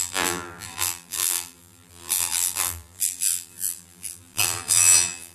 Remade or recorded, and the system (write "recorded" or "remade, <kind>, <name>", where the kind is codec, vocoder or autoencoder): remade, vocoder, BigVGAN v2